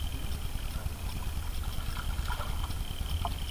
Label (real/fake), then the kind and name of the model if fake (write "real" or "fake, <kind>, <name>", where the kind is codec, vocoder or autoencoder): real